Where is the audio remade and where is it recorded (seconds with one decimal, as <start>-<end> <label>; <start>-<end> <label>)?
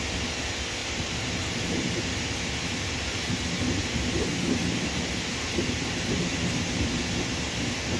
0.0-0.8 recorded; 0.8-2.0 remade; 2.0-4.3 recorded; 4.3-6.6 remade; 6.6-8.0 recorded